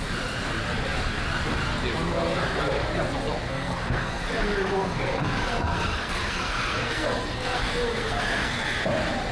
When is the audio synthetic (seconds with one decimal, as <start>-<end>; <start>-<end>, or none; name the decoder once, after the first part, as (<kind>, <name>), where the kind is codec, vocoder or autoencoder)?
3.5-8.8 (codec, SNAC)